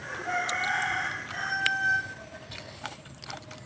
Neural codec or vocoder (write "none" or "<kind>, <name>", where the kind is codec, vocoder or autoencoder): none